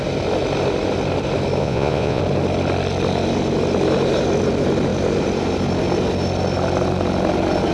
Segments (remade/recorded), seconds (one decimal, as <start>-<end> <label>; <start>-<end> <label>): 0.0-1.6 recorded; 1.6-2.2 remade; 2.2-7.7 recorded